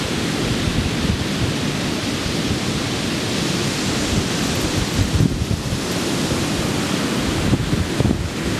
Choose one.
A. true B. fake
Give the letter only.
A